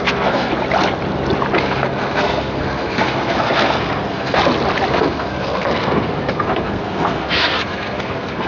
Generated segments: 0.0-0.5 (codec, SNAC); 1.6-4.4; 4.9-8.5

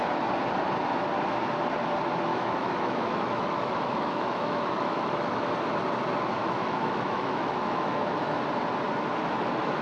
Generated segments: 2.3-5.5 (autoencoder, DAC-VAE); 6.4-8.4

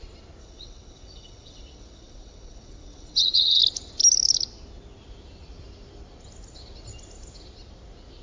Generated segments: 0.4-3.6 (vocoder, WaveNeXt)